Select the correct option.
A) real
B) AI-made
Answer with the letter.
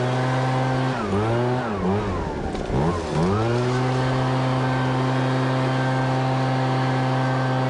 A